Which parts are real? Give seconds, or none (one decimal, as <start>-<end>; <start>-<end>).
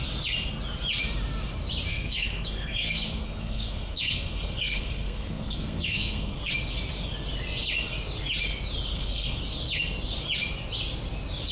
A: 0.0-1.9; 6.5-8.9; 9.4-11.5